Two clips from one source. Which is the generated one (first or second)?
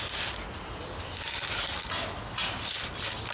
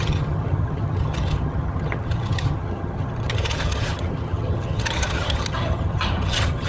second